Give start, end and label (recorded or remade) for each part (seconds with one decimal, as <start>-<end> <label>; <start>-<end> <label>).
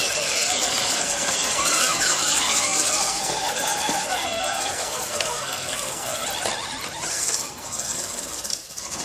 0.0-6.2 remade; 6.2-7.1 recorded; 7.1-9.0 remade